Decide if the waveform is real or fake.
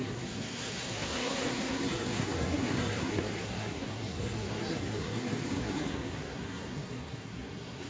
fake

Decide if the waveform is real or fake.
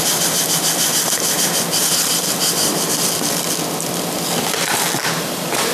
real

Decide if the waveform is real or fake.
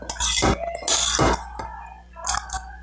real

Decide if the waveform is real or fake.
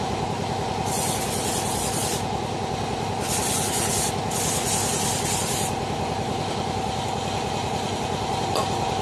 real